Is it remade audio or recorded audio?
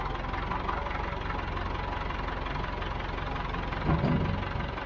recorded